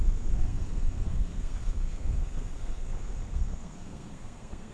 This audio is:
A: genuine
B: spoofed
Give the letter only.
B